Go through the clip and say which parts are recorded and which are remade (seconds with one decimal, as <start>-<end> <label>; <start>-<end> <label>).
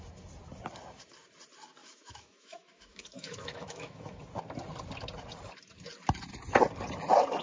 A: 0.0-1.8 recorded; 1.8-4.2 remade; 4.2-7.4 recorded